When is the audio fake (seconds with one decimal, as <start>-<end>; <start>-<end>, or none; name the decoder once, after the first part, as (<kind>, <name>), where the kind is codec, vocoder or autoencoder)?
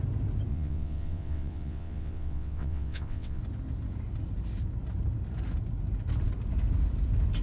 0.5-3.4 (vocoder, WaveNeXt)